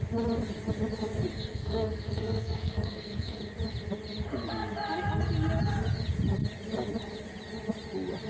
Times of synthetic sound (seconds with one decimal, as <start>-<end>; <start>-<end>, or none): 1.3-3.4